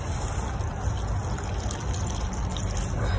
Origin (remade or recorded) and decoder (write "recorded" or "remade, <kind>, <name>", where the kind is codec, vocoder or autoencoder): recorded